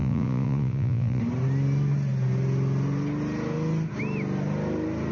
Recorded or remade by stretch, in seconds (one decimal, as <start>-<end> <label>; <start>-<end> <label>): 0.0-1.2 remade; 1.2-5.1 recorded